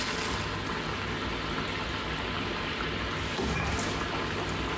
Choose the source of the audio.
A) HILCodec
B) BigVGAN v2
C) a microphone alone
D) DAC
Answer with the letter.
C